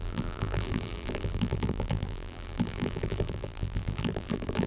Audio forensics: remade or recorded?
remade